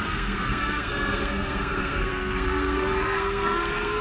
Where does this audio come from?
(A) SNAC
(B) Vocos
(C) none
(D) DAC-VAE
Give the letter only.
A